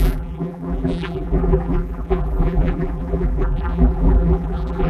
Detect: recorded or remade remade